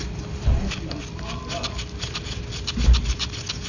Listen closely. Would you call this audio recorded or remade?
recorded